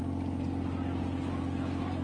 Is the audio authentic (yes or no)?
yes